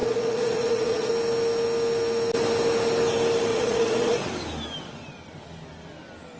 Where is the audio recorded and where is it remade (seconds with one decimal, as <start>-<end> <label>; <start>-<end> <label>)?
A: 0.0-1.1 remade; 1.1-3.5 recorded; 3.5-4.3 remade; 4.3-6.4 recorded